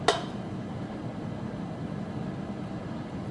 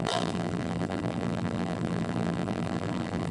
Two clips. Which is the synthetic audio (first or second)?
second